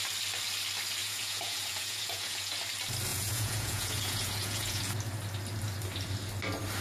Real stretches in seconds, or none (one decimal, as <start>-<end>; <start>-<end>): 0.0-1.0; 2.6-3.1; 5.0-6.8